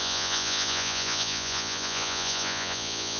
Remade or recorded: remade